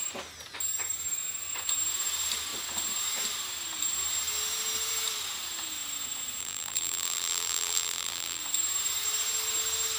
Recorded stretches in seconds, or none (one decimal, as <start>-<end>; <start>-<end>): 0.0-6.4; 8.4-10.0